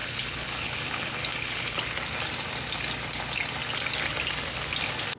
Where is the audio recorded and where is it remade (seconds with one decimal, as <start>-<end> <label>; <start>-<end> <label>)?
0.0-1.8 remade; 1.8-5.2 recorded